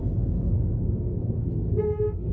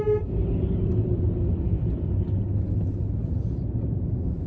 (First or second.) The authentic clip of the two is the second